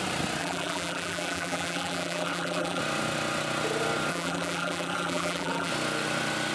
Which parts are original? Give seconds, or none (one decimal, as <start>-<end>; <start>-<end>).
0.0-0.4; 2.8-4.1; 5.7-6.5